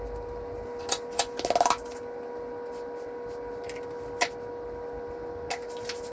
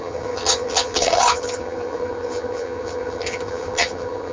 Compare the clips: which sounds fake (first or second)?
second